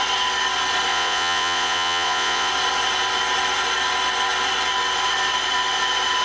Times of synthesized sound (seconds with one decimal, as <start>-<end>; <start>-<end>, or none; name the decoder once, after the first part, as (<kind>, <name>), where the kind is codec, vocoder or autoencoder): 0.9-2.5 (vocoder, Vocos)